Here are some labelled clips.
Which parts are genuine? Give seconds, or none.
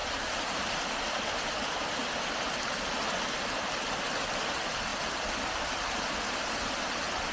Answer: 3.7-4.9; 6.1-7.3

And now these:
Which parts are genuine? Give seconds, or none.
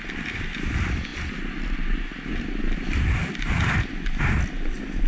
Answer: 0.0-5.1